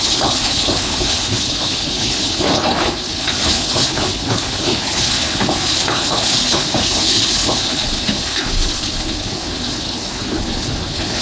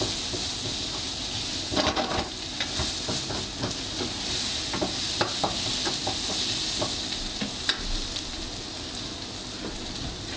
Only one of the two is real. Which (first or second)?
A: second